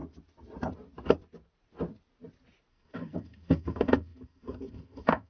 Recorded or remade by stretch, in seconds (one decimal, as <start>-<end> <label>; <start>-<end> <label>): 0.0-2.7 recorded; 2.7-5.3 remade